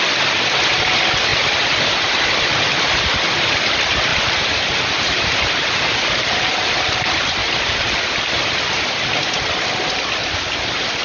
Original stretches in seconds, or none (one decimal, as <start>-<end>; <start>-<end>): 0.0-4.1; 6.9-7.4; 8.1-10.2